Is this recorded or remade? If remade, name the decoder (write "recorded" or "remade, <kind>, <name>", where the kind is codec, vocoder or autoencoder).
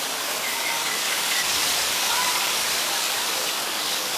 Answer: remade, codec, DAC